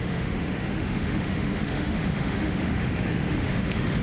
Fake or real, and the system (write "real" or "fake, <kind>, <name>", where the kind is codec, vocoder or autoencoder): fake, autoencoder, DAC-VAE